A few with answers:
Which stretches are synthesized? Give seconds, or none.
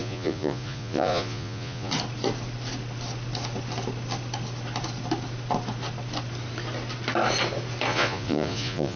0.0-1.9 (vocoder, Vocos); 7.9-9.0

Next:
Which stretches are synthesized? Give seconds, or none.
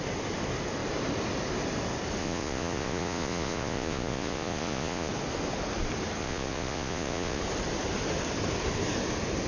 2.2-5.1 (vocoder, Vocos); 6.2-7.4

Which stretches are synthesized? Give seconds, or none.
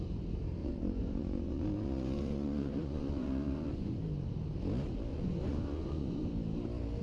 0.6-4.0 (vocoder, Vocos); 5.1-6.2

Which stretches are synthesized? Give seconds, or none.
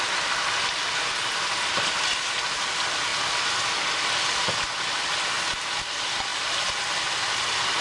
none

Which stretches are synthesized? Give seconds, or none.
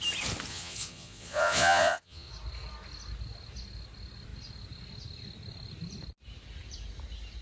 0.5-2.3 (vocoder, Vocos)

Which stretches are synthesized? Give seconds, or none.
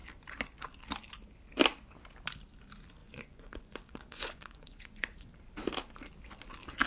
3.0-5.3 (vocoder, Vocos)